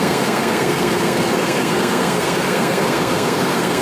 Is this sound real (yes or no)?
no